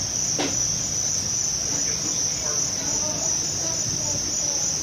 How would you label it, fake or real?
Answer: real